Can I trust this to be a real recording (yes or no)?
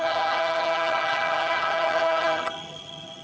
no